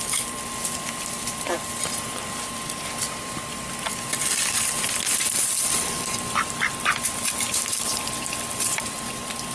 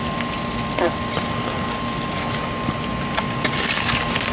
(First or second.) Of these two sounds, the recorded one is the second